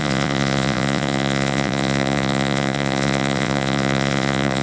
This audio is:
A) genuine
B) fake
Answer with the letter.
B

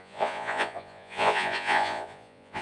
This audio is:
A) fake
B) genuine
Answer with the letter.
A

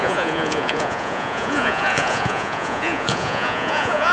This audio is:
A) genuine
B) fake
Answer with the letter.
B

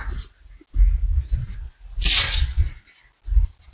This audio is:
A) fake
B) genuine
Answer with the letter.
B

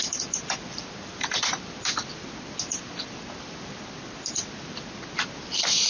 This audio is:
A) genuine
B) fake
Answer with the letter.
A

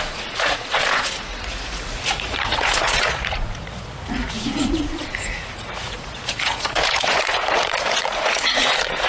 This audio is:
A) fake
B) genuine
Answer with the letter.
A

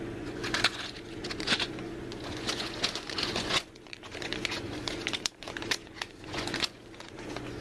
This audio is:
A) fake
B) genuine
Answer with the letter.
A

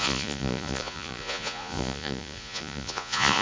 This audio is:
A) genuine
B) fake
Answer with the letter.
B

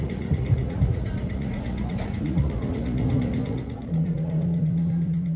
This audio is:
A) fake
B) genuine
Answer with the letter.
A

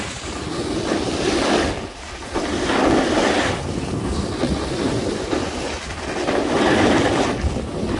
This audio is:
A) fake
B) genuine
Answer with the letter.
B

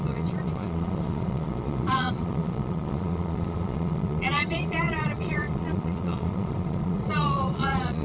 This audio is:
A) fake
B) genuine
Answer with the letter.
A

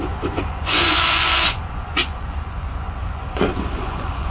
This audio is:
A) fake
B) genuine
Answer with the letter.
A